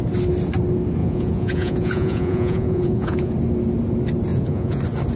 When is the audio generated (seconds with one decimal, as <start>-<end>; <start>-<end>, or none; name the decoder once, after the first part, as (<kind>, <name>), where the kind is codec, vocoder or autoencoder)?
1.0-3.3 (vocoder, Vocos); 4.3-4.8